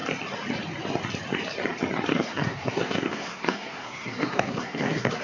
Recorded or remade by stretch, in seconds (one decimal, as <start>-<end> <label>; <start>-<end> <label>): 0.0-2.1 recorded; 2.1-5.2 remade